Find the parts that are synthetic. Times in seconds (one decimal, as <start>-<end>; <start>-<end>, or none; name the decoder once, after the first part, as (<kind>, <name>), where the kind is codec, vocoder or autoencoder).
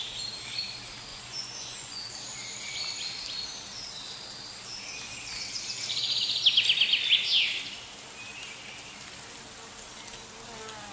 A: 1.1-2.0 (vocoder, Vocos)